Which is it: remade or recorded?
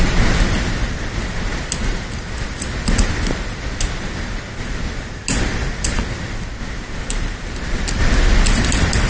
recorded